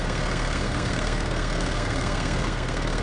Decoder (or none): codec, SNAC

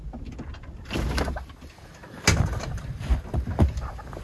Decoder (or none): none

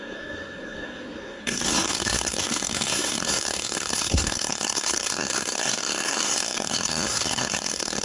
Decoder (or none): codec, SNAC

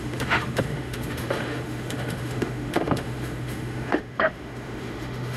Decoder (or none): autoencoder, DAC-VAE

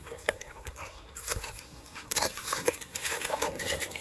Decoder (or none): codec, SNAC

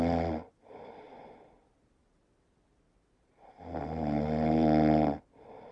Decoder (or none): none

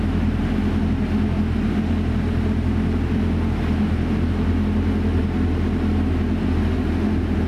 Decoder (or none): none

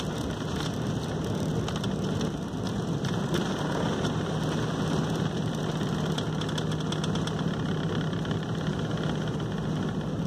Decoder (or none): none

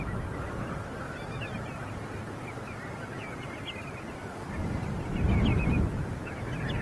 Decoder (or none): none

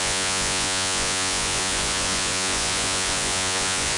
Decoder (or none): vocoder, Vocos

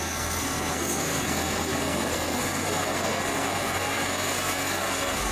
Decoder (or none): codec, SNAC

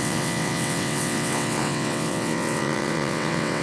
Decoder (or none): vocoder, WaveNeXt